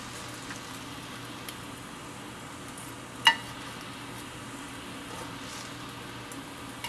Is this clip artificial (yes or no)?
no